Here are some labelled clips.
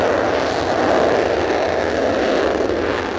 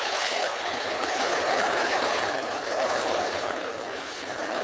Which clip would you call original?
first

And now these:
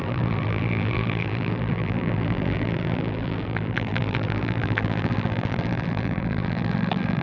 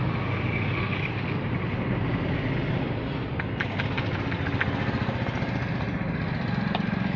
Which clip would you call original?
second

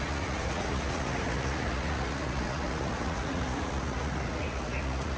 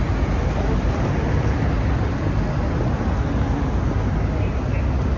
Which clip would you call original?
second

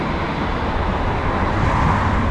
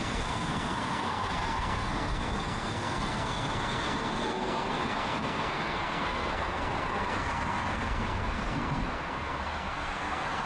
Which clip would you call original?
first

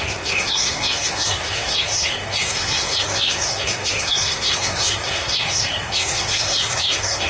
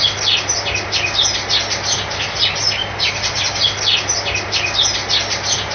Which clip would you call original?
second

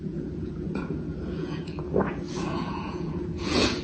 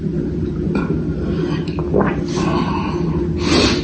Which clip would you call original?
second